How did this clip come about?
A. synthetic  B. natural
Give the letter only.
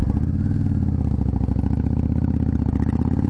B